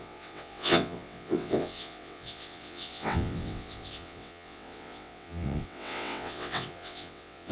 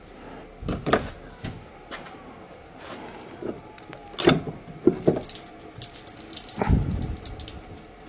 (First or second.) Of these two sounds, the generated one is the first